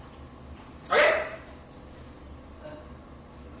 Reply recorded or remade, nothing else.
recorded